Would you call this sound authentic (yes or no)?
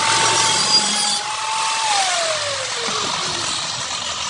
yes